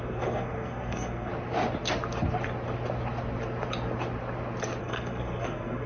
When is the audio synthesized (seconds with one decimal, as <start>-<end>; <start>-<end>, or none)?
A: 0.0-1.3; 4.8-5.9